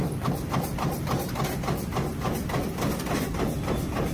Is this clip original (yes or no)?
yes